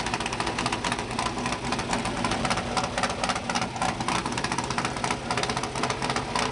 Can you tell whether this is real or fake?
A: real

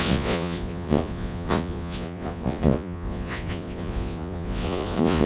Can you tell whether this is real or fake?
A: fake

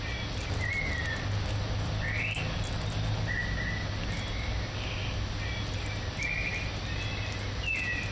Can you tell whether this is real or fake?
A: real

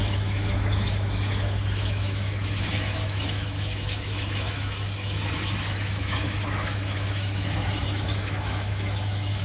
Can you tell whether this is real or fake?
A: fake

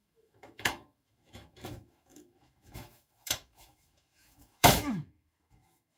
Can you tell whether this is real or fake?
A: fake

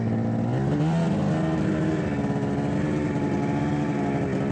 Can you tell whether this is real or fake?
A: real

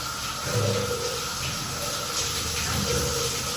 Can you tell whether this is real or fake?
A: real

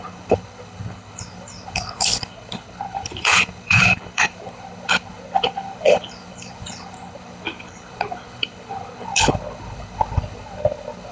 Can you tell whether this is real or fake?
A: fake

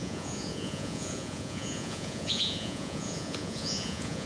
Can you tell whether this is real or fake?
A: fake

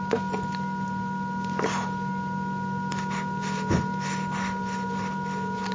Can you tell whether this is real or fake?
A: real